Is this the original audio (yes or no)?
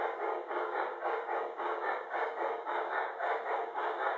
no